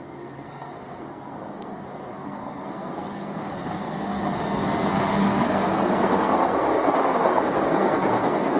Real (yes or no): no